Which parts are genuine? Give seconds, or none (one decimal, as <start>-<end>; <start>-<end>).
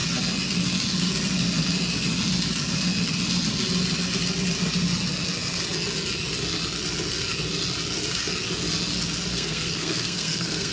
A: 0.0-9.3